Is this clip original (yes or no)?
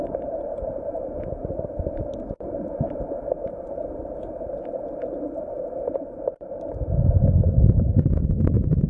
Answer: no